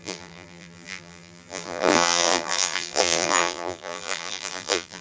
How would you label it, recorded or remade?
remade